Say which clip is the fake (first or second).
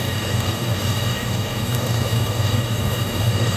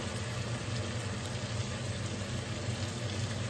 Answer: first